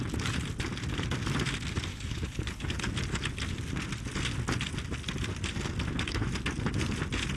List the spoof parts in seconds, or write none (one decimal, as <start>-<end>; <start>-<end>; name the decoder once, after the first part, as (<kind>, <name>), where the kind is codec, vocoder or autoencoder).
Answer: 1.9-2.9 (codec, HILCodec)